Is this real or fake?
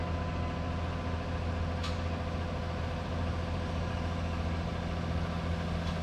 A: real